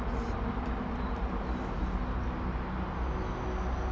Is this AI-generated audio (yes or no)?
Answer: no